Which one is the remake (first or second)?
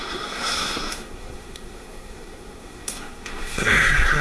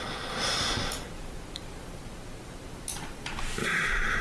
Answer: first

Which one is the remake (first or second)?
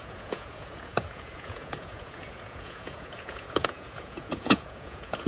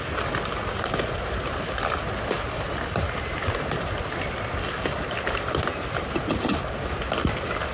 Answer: first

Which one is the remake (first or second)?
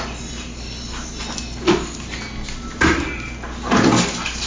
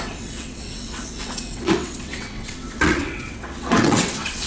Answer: second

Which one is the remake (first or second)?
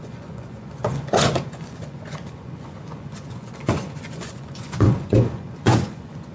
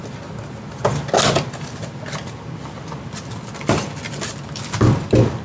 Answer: first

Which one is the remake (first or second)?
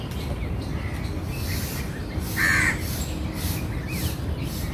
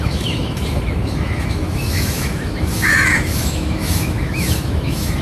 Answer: second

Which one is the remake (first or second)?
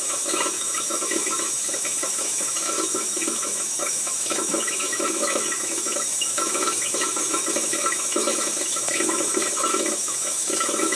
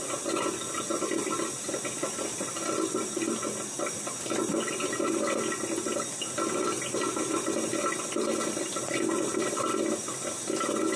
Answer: first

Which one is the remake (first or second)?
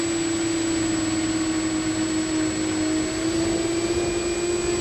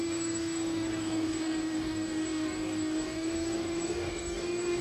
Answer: second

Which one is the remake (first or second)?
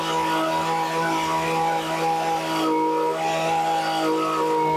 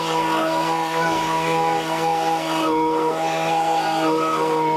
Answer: second